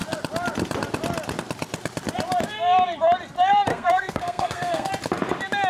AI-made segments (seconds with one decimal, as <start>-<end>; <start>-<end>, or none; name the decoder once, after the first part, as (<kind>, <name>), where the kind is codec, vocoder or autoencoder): 3.7-4.9 (codec, SNAC)